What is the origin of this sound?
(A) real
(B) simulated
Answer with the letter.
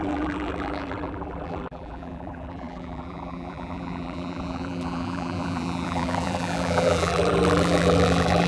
B